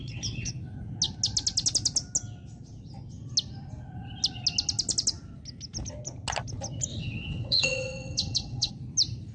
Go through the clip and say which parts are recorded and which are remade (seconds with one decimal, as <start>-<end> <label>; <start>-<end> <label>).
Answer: 0.0-0.5 remade; 0.5-6.9 recorded; 6.9-8.7 remade; 8.7-9.3 recorded